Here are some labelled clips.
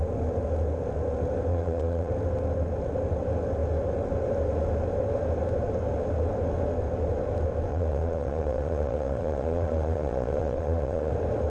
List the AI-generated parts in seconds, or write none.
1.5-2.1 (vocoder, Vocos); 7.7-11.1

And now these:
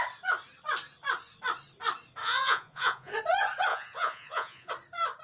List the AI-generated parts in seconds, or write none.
2.2-3.1 (vocoder, Vocos); 3.7-4.7

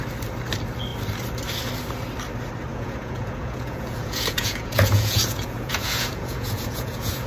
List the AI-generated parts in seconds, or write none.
2.7-7.3 (vocoder, Vocos)

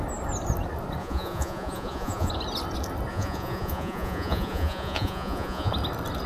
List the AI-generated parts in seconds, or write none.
1.0-2.3 (vocoder, Vocos); 3.1-5.7

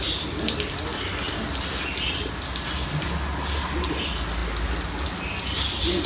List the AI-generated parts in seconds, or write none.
none

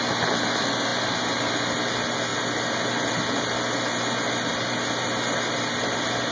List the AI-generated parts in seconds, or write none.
none

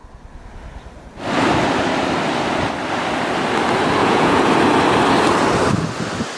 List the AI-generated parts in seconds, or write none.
4.0-4.5 (vocoder, Vocos)